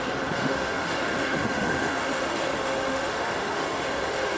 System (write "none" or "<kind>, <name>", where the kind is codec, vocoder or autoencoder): autoencoder, DAC-VAE